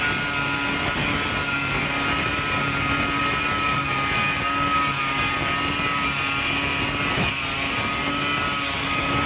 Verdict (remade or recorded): recorded